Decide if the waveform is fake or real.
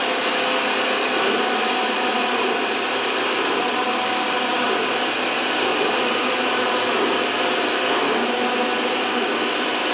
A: real